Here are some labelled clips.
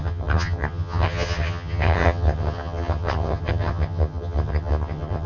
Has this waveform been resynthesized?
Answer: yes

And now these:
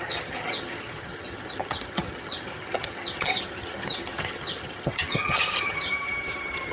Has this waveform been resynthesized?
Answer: yes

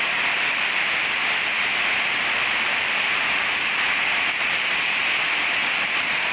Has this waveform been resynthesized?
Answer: no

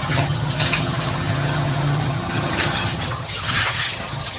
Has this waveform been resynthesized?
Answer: yes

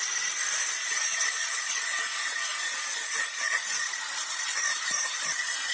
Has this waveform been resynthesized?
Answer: no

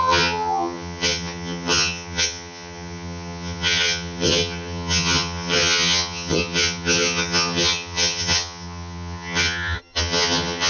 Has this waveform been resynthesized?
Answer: yes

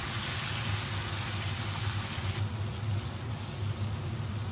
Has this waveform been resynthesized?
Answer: no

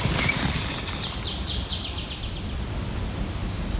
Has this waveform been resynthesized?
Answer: no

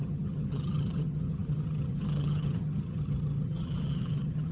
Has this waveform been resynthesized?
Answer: yes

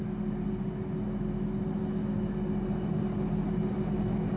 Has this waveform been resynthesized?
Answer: no